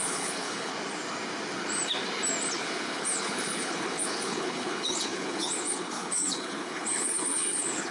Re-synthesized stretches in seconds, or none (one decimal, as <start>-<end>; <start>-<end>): 0.0-0.7; 2.6-7.9